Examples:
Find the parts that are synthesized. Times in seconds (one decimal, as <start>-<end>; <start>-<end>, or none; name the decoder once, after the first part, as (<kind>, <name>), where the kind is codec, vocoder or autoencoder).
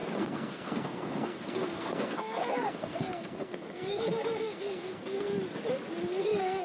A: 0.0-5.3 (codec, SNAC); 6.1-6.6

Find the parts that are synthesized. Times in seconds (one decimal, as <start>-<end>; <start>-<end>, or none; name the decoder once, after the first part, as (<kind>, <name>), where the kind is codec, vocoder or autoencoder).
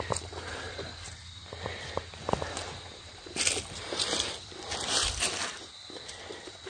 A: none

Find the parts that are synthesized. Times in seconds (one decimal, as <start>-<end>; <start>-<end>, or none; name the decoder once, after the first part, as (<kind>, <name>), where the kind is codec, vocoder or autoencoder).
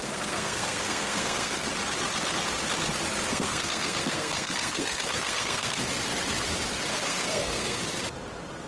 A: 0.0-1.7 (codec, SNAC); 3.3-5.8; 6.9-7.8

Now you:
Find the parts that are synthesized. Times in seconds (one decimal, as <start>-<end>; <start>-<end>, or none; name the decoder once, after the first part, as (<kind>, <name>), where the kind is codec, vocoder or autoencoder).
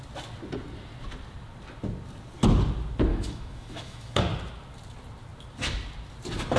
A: 3.1-4.2 (autoencoder, DAC-VAE)